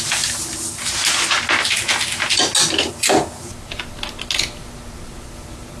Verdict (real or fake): real